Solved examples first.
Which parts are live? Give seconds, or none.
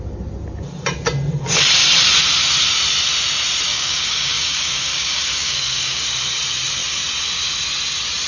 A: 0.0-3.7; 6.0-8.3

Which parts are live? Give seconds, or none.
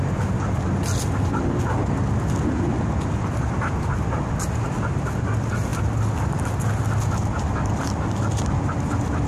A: 0.0-9.3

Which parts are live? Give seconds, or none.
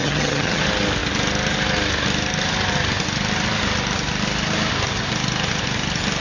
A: 0.6-6.2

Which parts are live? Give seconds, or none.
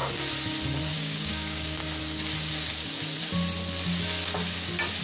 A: 0.0-0.9; 1.8-5.0